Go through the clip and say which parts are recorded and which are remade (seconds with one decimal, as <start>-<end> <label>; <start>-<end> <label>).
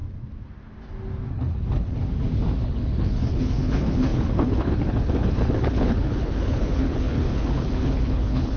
0.0-1.3 recorded; 1.3-2.0 remade; 2.0-2.6 recorded; 2.6-8.6 remade